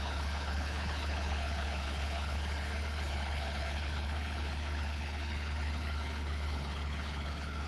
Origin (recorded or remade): remade